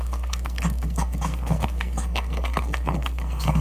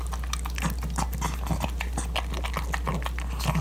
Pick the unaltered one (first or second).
second